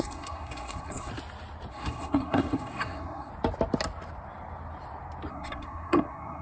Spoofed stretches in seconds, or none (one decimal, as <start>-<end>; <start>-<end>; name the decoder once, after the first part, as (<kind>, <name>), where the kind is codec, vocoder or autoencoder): 0.0-1.1 (codec, SNAC); 1.7-3.3; 5.3-6.4